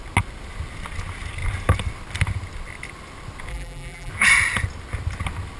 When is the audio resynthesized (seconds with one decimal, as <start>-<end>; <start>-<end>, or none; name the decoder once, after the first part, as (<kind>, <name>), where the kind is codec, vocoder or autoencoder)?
3.5-4.1 (vocoder, BigVGAN v2)